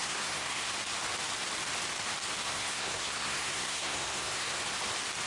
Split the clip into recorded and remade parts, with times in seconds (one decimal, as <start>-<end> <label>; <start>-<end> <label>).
0.0-0.7 remade; 0.7-2.4 recorded; 2.4-4.6 remade; 4.6-5.3 recorded